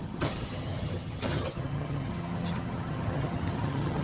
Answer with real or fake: fake